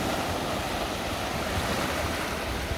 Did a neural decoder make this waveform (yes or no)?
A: no